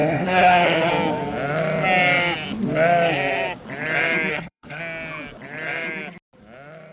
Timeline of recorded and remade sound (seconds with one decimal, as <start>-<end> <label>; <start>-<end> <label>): 0.0-0.9 remade; 0.9-4.3 recorded; 4.3-4.8 remade; 4.8-6.9 recorded